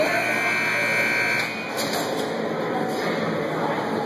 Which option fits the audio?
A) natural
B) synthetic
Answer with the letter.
A